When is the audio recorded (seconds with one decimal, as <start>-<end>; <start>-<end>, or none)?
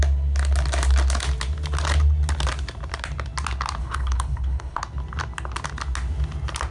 0.0-3.8; 4.8-6.7